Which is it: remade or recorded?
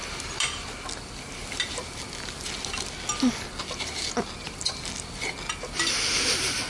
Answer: recorded